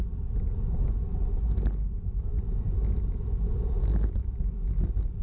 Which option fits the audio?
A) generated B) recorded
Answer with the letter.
B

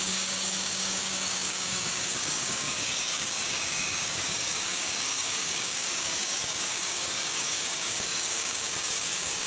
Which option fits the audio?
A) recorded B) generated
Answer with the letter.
B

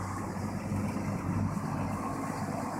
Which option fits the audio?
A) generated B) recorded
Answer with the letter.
B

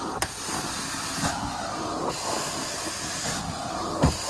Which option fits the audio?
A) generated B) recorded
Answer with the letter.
B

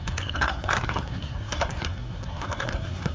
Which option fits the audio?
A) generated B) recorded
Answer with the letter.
A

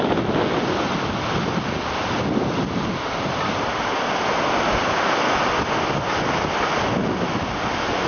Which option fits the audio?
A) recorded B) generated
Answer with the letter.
A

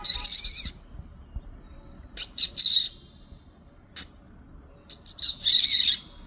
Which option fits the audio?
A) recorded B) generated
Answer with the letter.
A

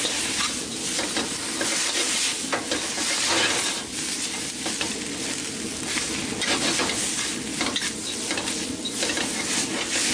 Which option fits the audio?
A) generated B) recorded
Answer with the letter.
B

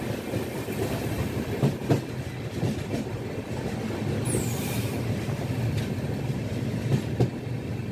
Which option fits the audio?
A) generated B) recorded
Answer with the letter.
B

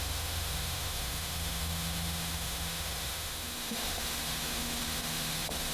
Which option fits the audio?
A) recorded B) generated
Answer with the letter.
B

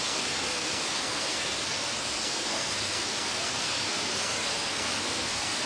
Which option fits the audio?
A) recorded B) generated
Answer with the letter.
B